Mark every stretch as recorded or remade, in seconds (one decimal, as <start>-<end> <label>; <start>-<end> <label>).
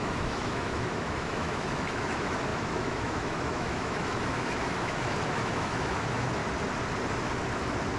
0.0-6.4 remade; 6.4-8.0 recorded